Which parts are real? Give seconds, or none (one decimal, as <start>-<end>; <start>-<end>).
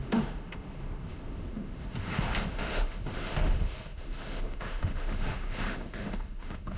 none